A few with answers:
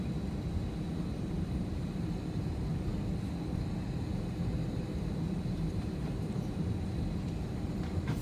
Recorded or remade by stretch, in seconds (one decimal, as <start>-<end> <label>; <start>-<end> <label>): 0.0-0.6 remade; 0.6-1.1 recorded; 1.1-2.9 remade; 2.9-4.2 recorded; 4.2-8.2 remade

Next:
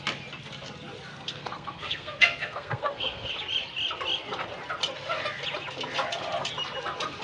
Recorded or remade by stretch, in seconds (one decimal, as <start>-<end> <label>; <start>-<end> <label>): 0.0-1.1 recorded; 1.1-3.3 remade; 3.3-7.2 recorded

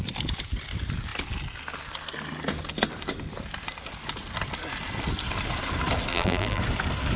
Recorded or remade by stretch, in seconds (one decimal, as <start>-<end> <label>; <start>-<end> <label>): 0.0-6.1 recorded; 6.1-6.6 remade; 6.6-7.2 recorded

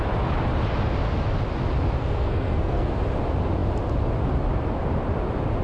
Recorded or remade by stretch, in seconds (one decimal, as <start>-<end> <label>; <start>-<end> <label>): 0.0-2.0 recorded; 2.0-2.9 remade; 2.9-5.6 recorded